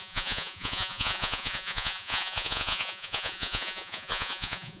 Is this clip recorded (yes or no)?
no